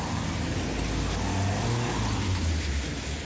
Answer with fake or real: real